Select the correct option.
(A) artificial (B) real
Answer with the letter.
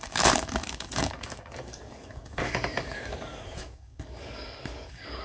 A